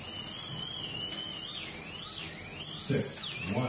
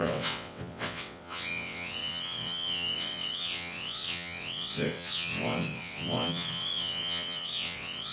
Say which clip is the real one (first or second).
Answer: first